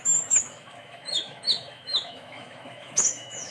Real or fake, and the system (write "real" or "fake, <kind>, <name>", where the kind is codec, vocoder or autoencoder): fake, autoencoder, DAC-VAE